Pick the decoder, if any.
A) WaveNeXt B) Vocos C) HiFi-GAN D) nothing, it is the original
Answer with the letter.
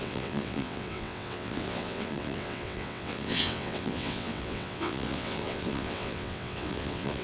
A